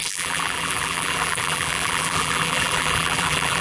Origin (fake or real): fake